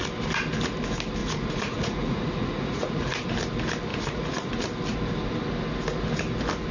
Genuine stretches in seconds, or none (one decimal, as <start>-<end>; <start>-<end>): 0.0-1.2; 3.3-3.9; 4.5-6.7